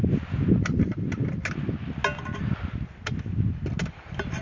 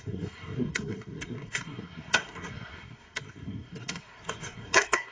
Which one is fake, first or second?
second